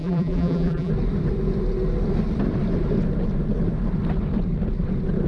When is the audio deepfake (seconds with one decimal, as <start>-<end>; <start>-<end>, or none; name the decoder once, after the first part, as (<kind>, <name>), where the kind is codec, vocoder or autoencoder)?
0.0-0.9 (vocoder, BigVGAN v2)